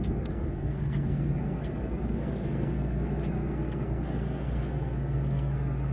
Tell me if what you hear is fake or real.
fake